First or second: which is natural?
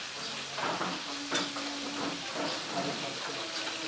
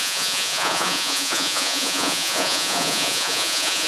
first